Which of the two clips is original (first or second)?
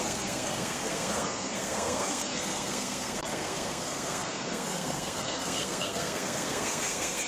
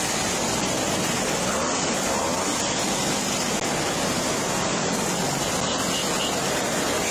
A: second